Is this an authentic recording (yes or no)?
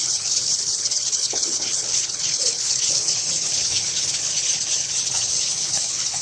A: no